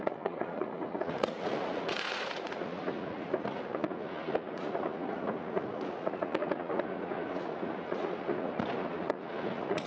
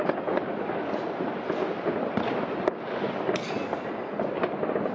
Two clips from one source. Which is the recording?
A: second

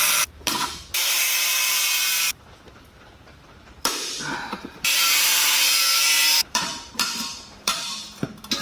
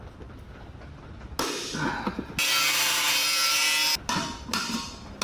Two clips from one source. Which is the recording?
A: second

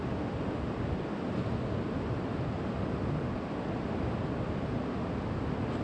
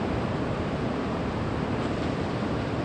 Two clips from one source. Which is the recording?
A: first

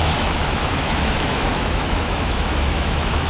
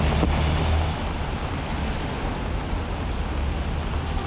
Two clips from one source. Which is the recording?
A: second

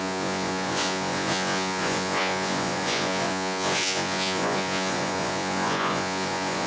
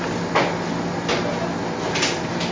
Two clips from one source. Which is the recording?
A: second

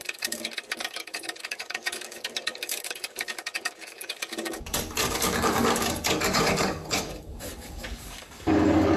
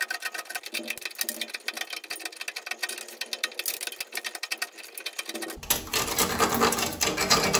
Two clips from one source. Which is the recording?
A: second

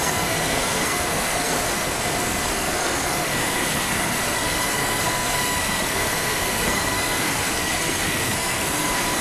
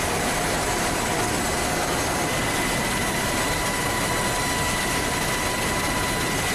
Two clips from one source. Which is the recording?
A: second